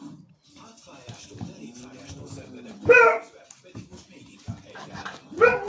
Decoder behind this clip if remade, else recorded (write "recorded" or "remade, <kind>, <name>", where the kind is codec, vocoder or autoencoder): recorded